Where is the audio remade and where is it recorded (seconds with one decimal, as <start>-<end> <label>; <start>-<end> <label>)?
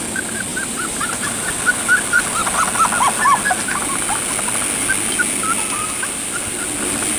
0.0-0.5 recorded; 0.5-1.5 remade; 1.5-7.2 recorded